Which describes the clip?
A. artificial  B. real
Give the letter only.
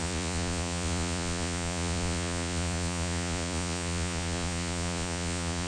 A